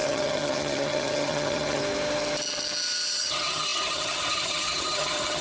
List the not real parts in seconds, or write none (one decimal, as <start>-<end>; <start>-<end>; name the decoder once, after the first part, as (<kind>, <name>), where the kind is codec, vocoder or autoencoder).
0.0-1.8 (vocoder, HiFi-GAN); 3.2-5.4